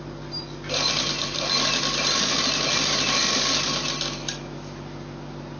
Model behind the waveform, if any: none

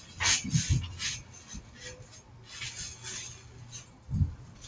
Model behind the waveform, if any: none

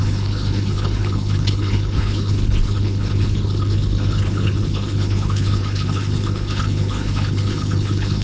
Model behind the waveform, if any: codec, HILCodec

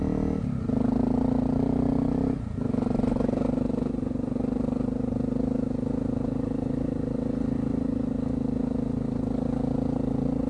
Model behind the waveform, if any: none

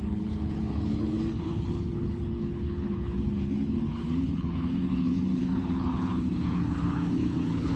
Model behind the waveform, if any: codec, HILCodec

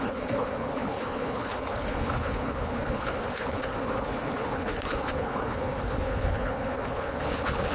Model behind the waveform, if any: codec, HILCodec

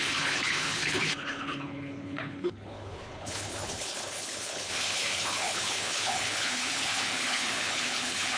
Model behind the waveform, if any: codec, HILCodec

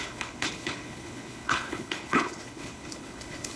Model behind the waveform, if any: codec, HILCodec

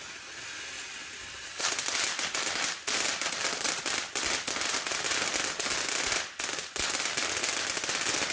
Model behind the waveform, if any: none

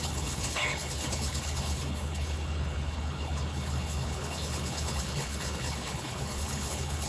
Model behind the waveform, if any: codec, HILCodec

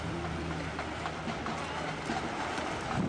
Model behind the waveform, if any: none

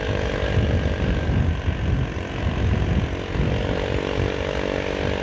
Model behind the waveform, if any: none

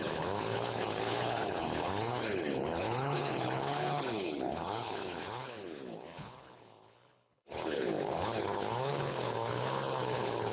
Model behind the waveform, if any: codec, HILCodec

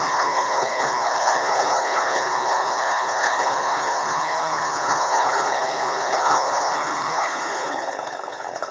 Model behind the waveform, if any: codec, HILCodec